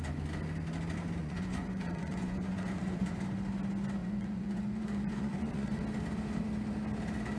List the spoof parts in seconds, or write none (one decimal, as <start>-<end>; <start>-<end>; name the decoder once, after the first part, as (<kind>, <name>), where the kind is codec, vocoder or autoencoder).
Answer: 1.2-3.2 (vocoder, Vocos); 4.0-5.8